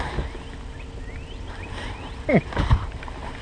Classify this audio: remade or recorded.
recorded